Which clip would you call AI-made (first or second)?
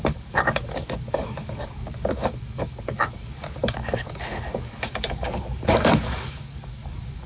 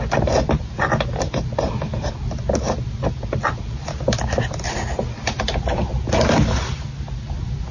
first